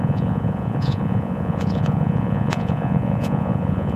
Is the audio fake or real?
fake